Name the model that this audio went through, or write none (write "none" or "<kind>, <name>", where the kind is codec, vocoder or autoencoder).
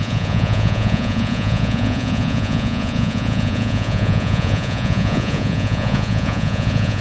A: vocoder, Vocos